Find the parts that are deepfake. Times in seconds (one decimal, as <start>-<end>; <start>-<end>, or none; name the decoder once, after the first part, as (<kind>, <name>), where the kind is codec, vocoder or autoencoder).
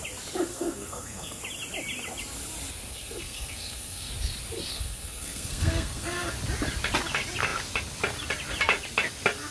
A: 0.5-1.4 (codec, SNAC); 2.9-4.1; 4.7-6.3